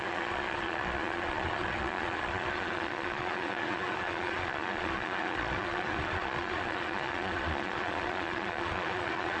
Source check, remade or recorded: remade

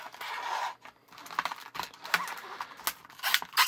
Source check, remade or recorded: recorded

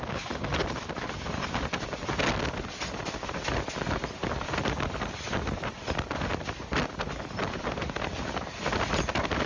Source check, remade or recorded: recorded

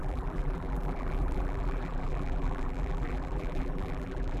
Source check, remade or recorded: remade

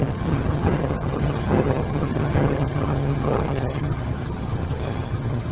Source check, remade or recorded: remade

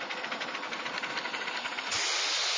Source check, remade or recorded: recorded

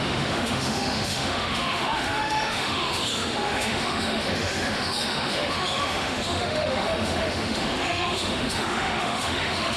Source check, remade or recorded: remade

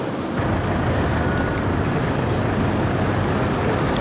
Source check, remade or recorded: recorded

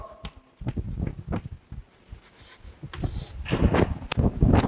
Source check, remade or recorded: recorded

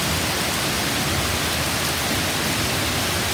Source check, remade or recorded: recorded